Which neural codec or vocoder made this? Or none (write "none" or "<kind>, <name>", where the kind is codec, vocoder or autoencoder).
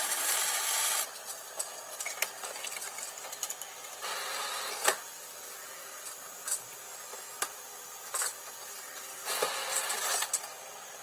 none